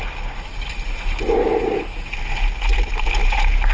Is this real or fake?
real